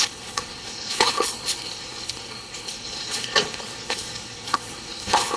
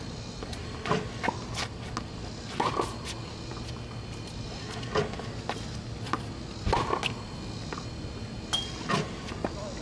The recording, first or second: second